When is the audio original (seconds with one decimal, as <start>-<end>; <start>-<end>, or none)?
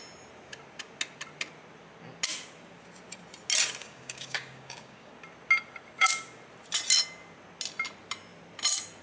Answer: 0.0-3.8; 5.1-9.0